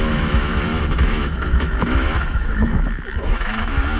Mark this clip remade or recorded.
remade